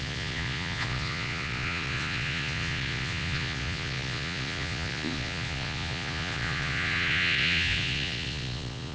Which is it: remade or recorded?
remade